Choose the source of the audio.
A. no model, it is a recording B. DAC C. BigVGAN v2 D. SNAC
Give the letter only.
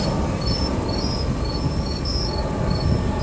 A